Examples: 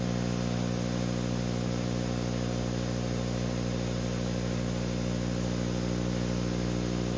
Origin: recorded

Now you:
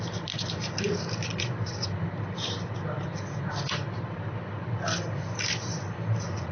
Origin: recorded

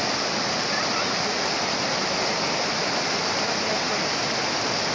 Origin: recorded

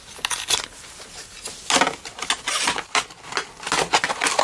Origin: recorded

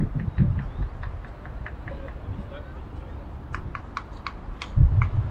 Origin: recorded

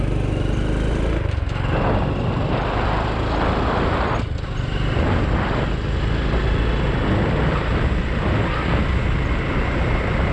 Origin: recorded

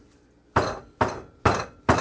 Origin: recorded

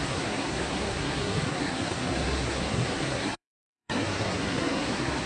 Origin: remade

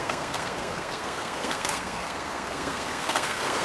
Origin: remade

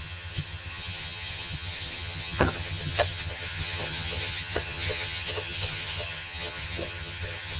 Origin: remade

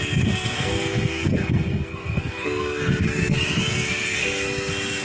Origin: remade